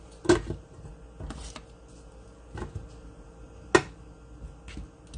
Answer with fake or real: real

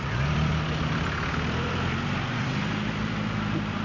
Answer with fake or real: fake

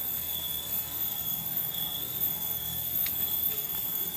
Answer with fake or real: fake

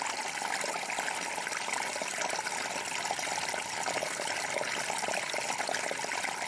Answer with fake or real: real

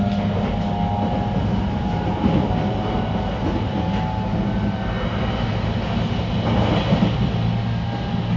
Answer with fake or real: real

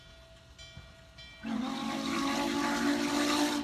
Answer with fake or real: real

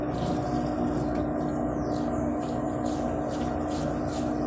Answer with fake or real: real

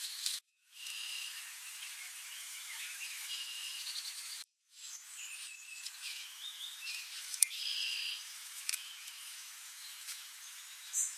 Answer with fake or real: fake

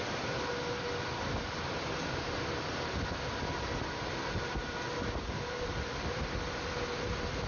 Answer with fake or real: fake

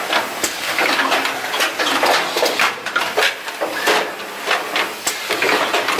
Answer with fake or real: real